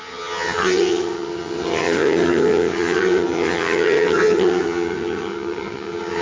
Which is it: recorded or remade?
remade